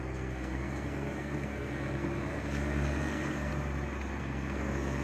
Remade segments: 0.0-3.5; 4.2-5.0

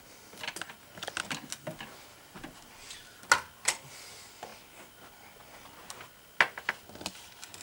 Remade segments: 2.1-3.2